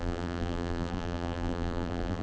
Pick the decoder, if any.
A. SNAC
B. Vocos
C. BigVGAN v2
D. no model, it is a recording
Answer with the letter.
C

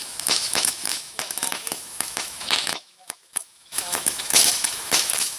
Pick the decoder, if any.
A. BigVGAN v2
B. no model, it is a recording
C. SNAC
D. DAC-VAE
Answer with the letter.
D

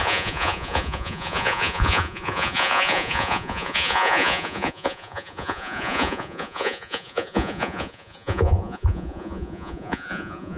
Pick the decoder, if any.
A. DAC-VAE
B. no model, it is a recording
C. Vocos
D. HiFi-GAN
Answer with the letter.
C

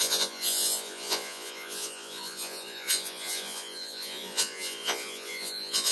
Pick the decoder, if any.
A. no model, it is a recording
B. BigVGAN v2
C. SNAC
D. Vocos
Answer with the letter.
D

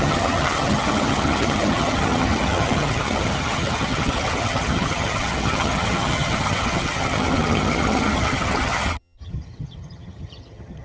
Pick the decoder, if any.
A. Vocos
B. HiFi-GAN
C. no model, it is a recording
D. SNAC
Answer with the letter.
B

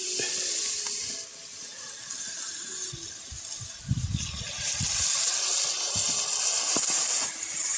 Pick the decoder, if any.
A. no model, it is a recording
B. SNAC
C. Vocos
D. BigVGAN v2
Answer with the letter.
A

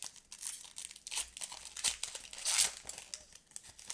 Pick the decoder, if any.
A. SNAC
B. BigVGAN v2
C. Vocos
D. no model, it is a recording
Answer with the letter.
D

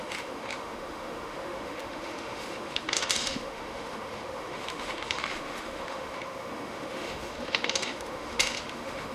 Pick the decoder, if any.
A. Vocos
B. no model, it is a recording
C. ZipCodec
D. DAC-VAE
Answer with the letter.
D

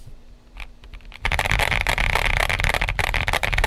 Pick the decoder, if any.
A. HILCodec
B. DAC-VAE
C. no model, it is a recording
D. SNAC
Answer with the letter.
C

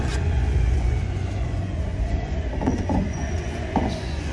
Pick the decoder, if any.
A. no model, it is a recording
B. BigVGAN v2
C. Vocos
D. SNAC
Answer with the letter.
C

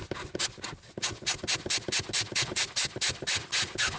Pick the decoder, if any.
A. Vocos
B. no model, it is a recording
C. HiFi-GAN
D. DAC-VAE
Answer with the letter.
B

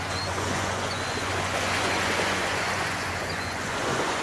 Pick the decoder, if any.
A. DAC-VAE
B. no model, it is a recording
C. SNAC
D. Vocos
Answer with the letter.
D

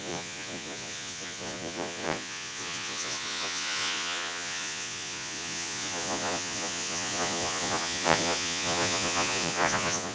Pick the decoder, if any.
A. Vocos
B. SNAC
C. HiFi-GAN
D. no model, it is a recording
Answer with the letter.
A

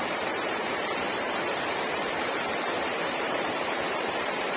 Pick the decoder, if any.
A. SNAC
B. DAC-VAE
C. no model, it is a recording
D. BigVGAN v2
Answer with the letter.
D